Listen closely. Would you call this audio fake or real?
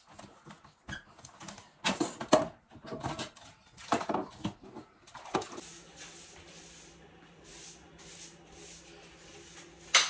real